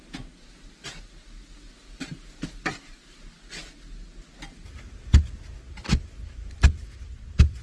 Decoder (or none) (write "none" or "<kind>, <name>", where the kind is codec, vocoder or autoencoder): none